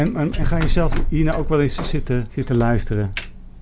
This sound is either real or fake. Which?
real